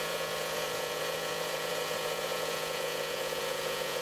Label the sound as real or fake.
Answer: fake